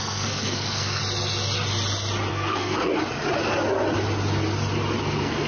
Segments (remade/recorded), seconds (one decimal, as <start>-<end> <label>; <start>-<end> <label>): 0.0-1.0 remade; 1.0-2.3 recorded; 2.3-2.9 remade; 2.9-5.0 recorded; 5.0-5.5 remade